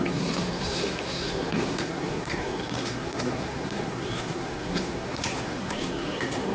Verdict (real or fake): fake